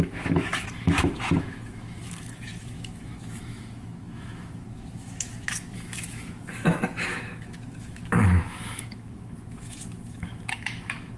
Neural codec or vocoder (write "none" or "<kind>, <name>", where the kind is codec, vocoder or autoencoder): autoencoder, DAC-VAE